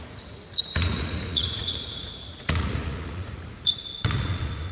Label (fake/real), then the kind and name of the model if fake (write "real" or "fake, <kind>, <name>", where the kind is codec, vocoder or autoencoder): fake, vocoder, Vocos